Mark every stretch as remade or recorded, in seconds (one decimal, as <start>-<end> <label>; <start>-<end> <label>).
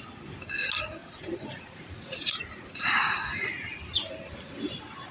0.0-1.0 recorded; 1.0-4.1 remade; 4.1-5.1 recorded